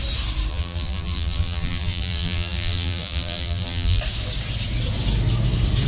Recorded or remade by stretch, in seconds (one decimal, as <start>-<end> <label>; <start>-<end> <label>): 0.0-0.5 recorded; 0.5-4.0 remade; 4.0-5.9 recorded